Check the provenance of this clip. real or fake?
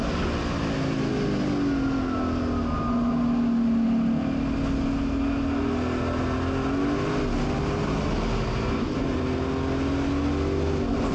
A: real